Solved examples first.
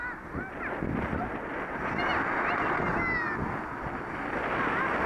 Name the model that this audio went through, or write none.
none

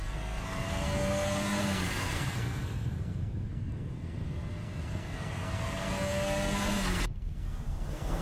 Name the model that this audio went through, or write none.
codec, SNAC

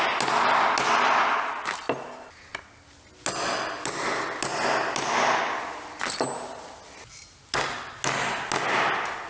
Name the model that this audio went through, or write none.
none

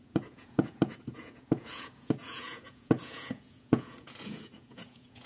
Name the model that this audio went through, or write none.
vocoder, Vocos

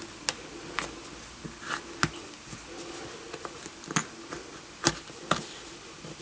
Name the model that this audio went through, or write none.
none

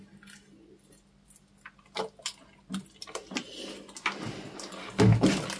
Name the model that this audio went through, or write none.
none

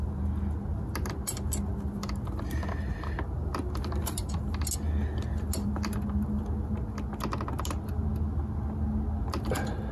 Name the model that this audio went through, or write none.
none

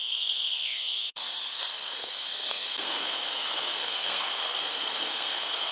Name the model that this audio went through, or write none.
codec, SNAC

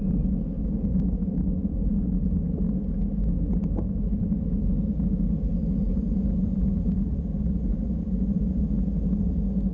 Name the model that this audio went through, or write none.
none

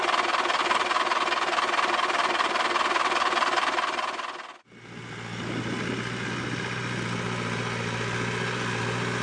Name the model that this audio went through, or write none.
none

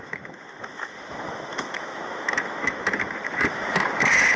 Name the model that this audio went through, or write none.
autoencoder, DAC-VAE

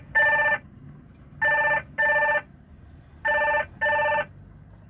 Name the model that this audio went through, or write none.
none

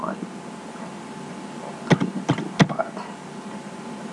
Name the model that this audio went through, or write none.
none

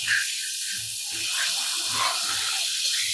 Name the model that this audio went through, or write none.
none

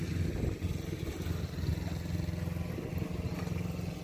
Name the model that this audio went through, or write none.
none